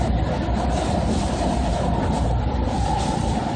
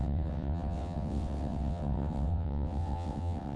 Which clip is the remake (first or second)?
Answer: second